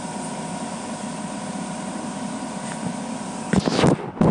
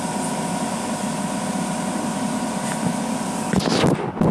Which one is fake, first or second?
first